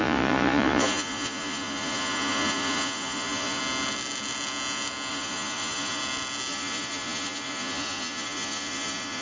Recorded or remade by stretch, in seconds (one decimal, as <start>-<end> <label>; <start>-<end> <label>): 0.0-3.6 remade; 3.6-5.1 recorded; 5.1-6.0 remade; 6.0-6.5 recorded; 6.5-9.2 remade